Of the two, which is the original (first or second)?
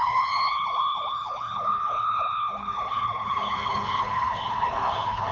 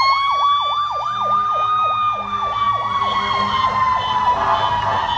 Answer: second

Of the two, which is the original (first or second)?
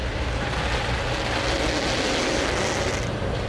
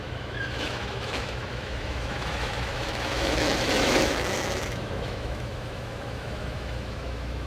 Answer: first